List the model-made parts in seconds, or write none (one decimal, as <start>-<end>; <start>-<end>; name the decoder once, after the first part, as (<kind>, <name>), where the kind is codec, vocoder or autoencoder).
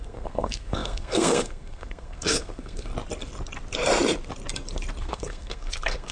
0.0-2.9 (codec, SNAC); 5.0-6.1